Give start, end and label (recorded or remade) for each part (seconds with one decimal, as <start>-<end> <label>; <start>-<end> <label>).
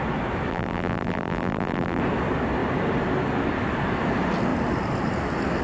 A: 0.0-0.5 recorded; 0.5-2.0 remade; 2.0-5.6 recorded